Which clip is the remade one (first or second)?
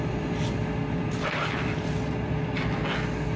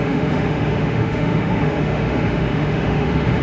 second